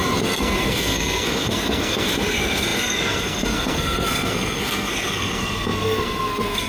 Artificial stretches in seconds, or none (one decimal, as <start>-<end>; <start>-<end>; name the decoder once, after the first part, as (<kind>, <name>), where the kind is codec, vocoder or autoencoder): 0.0-6.7 (codec, SNAC)